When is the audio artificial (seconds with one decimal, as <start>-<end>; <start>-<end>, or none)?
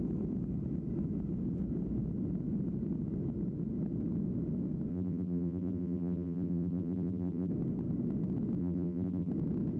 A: 4.9-7.5; 8.6-9.3